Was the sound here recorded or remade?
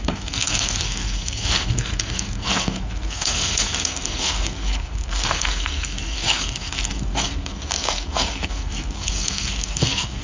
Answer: remade